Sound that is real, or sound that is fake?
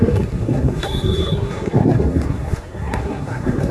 fake